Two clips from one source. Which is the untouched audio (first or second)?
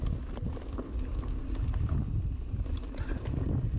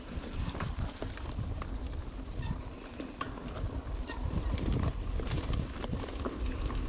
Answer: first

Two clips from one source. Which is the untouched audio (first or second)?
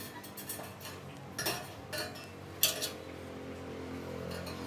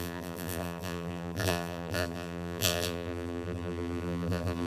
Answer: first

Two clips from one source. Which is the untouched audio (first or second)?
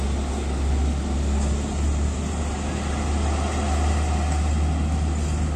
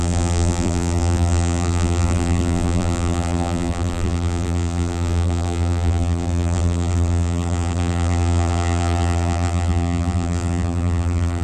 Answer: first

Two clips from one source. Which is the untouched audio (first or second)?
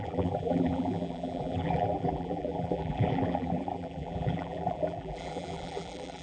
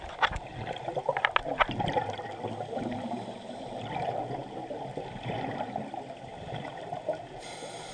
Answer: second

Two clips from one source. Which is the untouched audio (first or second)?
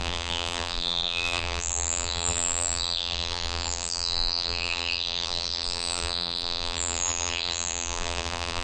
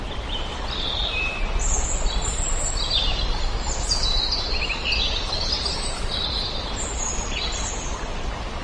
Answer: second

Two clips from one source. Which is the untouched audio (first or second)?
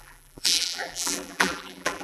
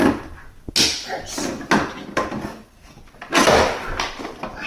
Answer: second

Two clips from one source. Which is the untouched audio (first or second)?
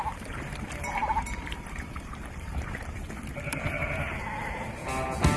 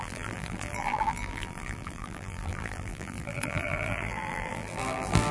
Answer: first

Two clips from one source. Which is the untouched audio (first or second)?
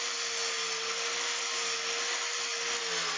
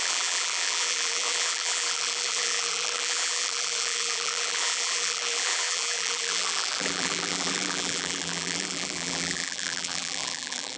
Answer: first